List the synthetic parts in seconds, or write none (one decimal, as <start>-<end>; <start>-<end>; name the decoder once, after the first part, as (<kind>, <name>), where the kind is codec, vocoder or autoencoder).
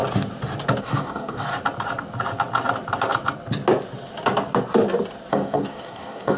0.8-1.5 (codec, DAC); 5.3-6.4